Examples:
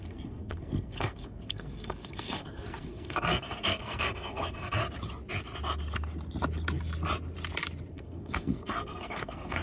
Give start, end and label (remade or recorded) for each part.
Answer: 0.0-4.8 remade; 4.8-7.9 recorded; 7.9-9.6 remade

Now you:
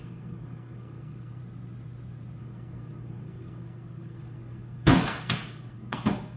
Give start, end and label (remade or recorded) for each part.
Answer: 0.0-1.4 remade; 1.4-2.4 recorded; 2.4-6.4 remade